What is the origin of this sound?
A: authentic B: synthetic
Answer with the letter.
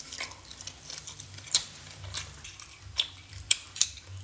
B